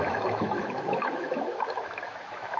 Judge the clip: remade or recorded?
remade